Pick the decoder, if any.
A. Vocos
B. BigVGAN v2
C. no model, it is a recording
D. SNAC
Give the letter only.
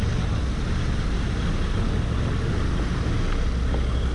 C